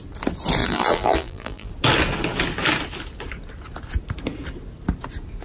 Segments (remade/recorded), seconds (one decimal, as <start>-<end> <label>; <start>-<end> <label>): 0.0-0.6 recorded; 0.6-1.7 remade; 1.7-5.4 recorded